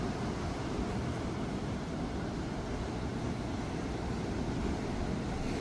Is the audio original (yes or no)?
yes